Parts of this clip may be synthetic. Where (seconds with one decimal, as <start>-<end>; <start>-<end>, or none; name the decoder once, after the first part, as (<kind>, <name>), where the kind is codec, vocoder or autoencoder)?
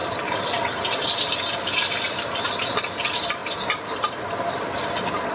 none